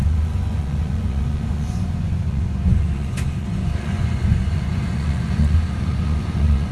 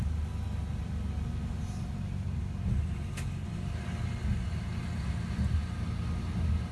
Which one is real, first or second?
second